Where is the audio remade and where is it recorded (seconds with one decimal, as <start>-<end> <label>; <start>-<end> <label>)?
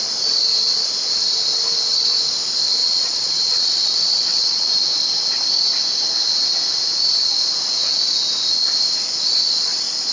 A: 0.0-2.8 recorded; 2.8-4.6 remade; 4.6-10.1 recorded